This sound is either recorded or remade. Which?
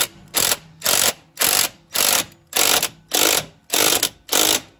recorded